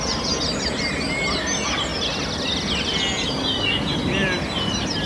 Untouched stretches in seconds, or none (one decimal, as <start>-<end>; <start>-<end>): 0.0-5.1